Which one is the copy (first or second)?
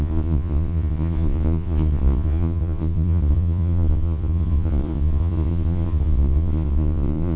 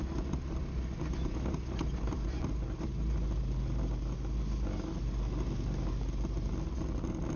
first